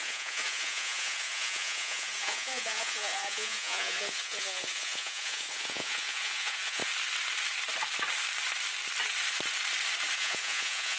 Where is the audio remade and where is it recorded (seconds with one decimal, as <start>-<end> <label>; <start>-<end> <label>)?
0.0-6.8 remade; 6.8-10.2 recorded; 10.2-11.0 remade